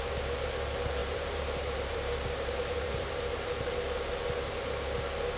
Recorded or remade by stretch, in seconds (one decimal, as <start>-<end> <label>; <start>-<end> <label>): 0.0-1.0 recorded; 1.0-3.1 remade; 3.1-5.4 recorded